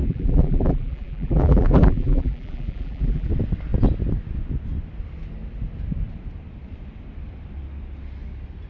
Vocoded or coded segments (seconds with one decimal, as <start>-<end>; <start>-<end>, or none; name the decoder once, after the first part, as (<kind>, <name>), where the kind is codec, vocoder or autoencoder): 0.0-3.3 (vocoder, BigVGAN v2)